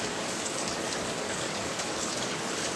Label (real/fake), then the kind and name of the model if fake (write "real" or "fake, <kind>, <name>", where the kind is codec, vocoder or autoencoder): fake, codec, DAC